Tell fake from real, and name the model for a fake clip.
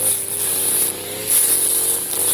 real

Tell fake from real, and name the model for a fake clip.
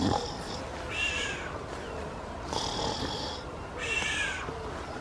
real